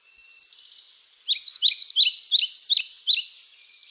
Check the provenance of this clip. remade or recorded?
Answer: recorded